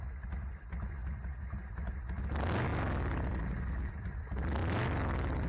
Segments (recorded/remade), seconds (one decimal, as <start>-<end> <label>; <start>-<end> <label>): 0.0-5.5 recorded

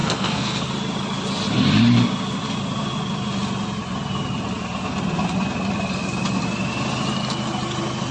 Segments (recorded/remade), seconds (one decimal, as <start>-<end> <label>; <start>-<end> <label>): 0.0-0.7 remade; 0.7-8.1 recorded

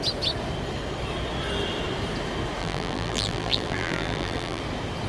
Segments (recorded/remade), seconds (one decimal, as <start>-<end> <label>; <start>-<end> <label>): 0.0-2.6 recorded; 2.6-4.6 remade; 4.6-5.1 recorded

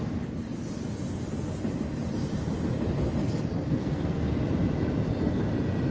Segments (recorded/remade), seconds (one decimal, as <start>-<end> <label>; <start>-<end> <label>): 0.0-3.6 recorded; 3.6-4.2 remade; 4.2-5.9 recorded

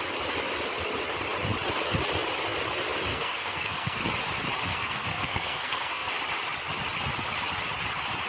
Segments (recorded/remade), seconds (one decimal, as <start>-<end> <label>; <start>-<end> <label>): 0.0-3.1 recorded; 3.1-4.1 remade; 4.1-4.7 recorded; 4.7-6.1 remade; 6.1-8.3 recorded

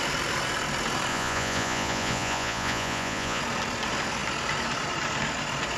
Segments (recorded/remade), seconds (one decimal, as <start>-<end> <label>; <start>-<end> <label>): 0.0-1.1 recorded; 1.1-3.4 remade; 3.4-5.8 recorded

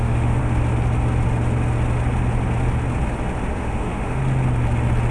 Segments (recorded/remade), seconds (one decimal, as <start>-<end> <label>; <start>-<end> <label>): 0.0-0.4 remade; 0.4-3.5 recorded; 3.5-4.2 remade; 4.2-5.1 recorded